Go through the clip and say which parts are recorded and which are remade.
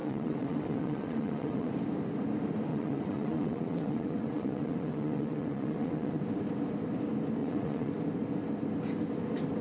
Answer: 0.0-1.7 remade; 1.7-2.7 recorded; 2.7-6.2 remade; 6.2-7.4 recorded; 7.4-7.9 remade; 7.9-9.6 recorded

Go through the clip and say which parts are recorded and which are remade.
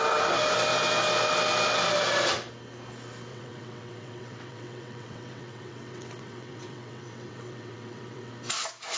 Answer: 0.0-3.3 recorded; 3.3-8.3 remade; 8.3-9.0 recorded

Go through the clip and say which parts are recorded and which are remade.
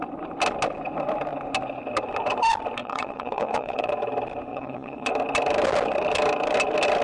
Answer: 0.0-2.8 recorded; 2.8-3.9 remade; 3.9-4.5 recorded; 4.5-5.1 remade; 5.1-7.0 recorded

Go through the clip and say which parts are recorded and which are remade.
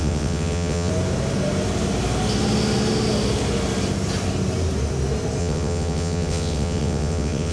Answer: 0.0-0.9 remade; 0.9-5.4 recorded; 5.4-7.5 remade